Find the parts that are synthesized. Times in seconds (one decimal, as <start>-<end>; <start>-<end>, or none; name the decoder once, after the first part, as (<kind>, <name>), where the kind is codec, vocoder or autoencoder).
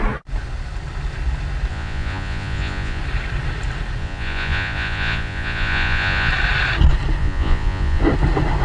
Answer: 1.7-3.0 (vocoder, Vocos); 4.0-6.3; 7.2-8.0